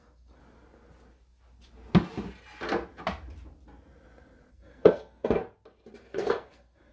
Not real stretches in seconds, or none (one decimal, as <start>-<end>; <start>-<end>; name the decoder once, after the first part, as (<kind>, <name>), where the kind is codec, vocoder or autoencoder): 0.0-0.4 (codec, SNAC); 4.5-5.4; 6.0-6.9